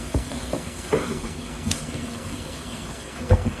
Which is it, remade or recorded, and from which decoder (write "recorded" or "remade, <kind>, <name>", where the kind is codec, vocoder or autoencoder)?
remade, codec, SNAC